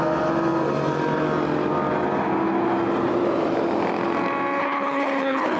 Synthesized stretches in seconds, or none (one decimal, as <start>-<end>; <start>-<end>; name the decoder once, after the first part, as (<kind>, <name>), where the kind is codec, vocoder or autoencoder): 4.6-5.6 (codec, HILCodec)